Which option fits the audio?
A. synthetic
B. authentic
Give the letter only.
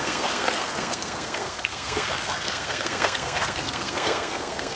A